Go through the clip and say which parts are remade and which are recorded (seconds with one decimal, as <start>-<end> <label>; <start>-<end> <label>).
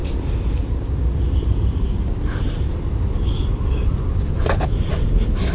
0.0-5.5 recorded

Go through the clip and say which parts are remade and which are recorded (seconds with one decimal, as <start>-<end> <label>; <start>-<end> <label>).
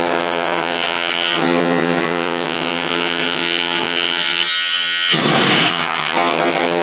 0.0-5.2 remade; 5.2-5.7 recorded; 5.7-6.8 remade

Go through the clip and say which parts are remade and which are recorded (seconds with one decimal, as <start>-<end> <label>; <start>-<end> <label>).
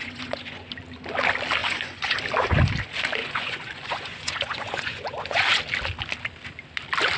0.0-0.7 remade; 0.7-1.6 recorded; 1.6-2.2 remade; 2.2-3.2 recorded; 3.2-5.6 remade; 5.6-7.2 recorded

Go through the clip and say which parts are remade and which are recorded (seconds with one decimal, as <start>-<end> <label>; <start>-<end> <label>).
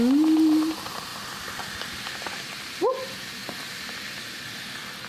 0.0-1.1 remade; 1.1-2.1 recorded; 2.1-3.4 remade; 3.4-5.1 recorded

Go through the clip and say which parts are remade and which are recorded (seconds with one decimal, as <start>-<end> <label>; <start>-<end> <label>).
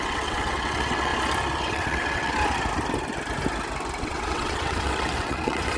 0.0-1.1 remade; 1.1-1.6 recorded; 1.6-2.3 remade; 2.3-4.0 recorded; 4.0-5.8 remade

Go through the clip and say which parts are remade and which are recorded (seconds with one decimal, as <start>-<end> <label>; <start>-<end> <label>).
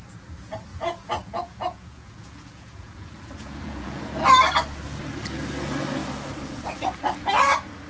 0.0-0.7 recorded; 0.7-4.0 remade; 4.0-7.9 recorded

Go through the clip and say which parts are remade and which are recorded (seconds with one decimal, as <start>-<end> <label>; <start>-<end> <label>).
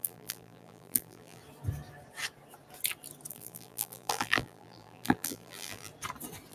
0.0-1.4 remade; 1.4-3.3 recorded; 3.3-5.9 remade; 5.9-6.5 recorded